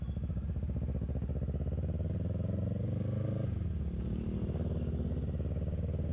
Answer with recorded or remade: recorded